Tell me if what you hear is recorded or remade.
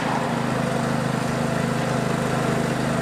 recorded